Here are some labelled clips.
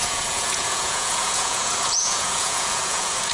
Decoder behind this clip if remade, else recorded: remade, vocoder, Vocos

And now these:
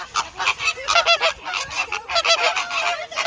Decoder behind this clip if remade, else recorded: recorded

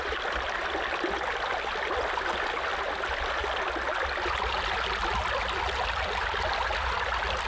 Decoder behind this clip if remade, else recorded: recorded